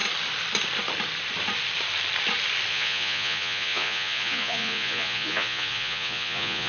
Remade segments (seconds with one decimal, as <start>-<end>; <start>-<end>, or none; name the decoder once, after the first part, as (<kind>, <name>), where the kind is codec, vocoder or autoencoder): 2.7-6.7 (vocoder, Vocos)